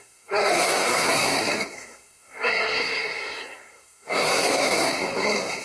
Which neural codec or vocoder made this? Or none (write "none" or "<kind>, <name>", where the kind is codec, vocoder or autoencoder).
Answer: codec, SNAC